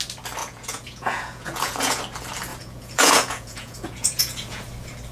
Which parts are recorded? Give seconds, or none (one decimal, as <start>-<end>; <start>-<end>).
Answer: 0.0-0.4; 2.0-2.5; 4.6-5.1

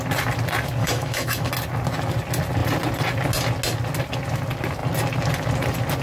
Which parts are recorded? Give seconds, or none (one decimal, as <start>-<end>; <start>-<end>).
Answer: 0.0-0.8; 1.5-6.0

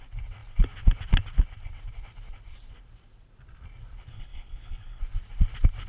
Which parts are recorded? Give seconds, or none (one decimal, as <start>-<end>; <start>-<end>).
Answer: 0.0-4.1; 5.0-5.9

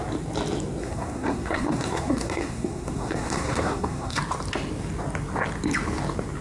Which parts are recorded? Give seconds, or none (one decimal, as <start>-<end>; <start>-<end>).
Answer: 0.0-0.8; 4.2-6.4

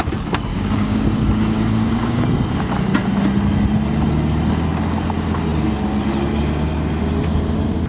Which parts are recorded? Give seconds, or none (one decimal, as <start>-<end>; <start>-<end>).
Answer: 0.0-0.5; 2.2-7.9

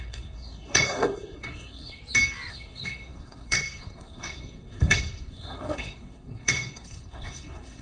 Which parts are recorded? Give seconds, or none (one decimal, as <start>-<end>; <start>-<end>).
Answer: 2.0-2.5

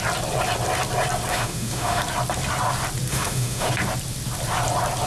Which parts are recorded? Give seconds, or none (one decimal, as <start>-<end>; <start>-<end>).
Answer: 0.0-1.3; 2.0-3.1; 3.7-5.1

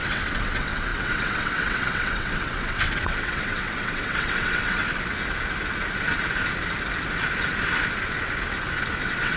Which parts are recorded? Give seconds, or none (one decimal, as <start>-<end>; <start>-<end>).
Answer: 4.8-9.0